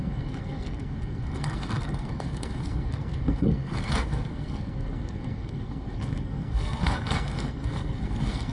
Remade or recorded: remade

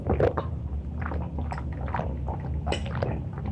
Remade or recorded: recorded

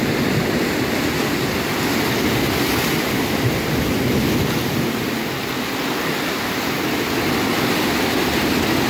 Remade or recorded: recorded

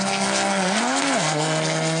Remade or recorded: remade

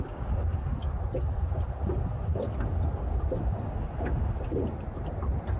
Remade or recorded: recorded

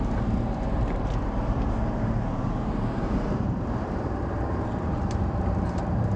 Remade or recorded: remade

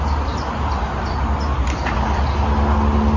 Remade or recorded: recorded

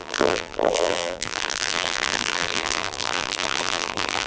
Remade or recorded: remade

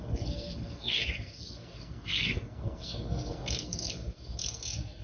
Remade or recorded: remade